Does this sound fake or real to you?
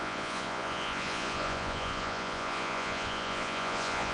fake